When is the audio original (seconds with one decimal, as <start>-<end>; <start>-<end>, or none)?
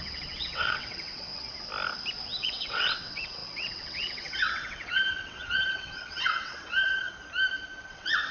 1.3-2.4; 7.1-7.9